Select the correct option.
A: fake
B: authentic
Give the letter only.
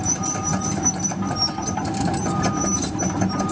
A